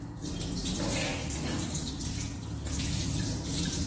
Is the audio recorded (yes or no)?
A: yes